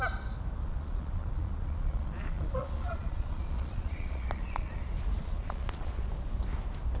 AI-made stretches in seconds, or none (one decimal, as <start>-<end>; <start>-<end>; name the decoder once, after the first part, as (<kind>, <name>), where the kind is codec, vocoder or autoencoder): 0.6-4.8 (vocoder, Vocos); 5.2-6.1